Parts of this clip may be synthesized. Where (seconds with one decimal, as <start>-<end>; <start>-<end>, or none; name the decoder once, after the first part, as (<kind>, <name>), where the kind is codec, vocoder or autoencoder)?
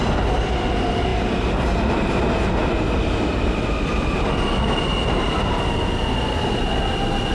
none